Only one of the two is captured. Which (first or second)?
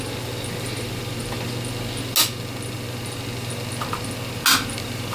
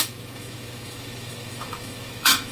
first